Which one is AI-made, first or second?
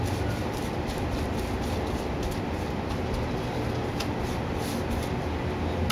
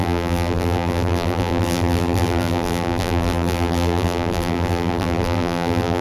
second